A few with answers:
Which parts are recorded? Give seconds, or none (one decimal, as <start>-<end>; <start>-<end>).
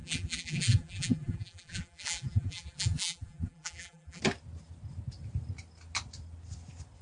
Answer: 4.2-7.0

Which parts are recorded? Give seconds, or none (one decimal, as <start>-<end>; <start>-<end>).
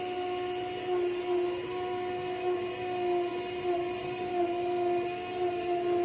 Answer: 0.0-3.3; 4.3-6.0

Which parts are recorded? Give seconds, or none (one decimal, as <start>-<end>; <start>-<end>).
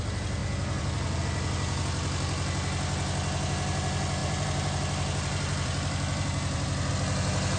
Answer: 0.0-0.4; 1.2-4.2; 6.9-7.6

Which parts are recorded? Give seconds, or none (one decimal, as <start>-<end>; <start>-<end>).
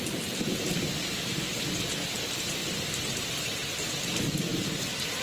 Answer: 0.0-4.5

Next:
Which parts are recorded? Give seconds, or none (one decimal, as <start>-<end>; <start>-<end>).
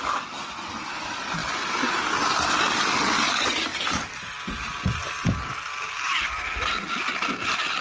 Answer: 0.0-3.7; 4.3-5.5; 6.9-7.8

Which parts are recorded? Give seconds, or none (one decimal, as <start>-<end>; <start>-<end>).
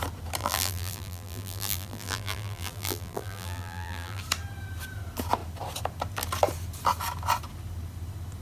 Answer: 0.0-0.4; 4.2-8.4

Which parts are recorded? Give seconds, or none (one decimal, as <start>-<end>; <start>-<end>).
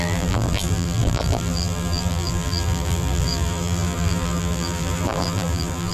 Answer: none